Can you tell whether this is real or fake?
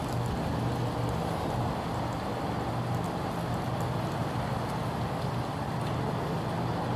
real